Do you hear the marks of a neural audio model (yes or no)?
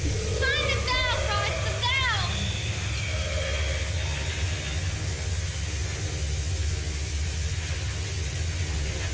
no